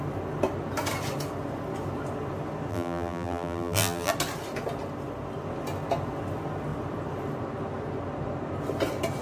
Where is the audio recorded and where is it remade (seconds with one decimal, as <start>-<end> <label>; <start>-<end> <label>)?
0.0-2.7 recorded; 2.7-4.1 remade; 4.1-9.2 recorded